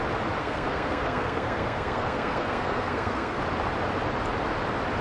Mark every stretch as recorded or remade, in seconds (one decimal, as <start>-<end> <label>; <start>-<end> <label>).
0.0-0.4 recorded; 0.4-3.4 remade; 3.4-5.0 recorded